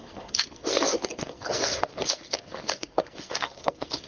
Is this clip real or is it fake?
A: fake